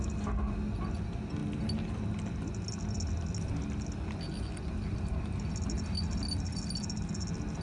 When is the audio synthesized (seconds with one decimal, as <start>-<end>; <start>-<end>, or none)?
none